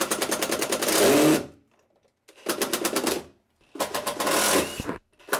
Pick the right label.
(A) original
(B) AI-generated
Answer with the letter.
A